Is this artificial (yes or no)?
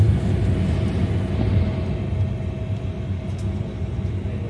no